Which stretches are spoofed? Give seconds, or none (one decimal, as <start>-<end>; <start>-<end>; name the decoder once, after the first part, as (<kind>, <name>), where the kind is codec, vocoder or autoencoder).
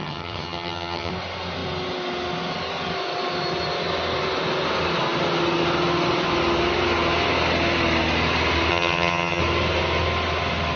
0.0-1.1 (vocoder, HiFi-GAN); 8.7-9.4